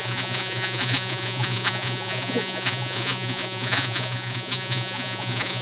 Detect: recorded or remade remade